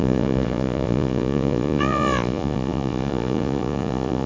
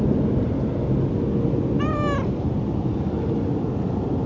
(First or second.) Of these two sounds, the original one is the second